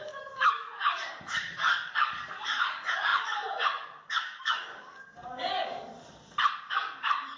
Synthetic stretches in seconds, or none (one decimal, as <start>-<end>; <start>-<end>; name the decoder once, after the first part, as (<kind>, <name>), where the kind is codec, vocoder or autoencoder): 0.0-5.9 (codec, DAC); 6.7-7.4